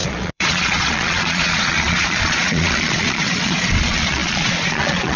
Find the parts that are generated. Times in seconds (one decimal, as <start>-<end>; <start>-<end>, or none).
0.0-5.2